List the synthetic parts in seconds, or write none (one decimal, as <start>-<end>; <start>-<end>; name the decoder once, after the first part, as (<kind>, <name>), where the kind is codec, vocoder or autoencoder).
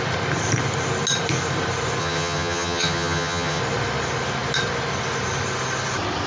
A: 2.0-3.6 (vocoder, HiFi-GAN)